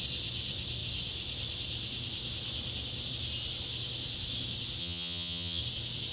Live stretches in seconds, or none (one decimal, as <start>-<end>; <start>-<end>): 0.0-4.8; 5.6-6.1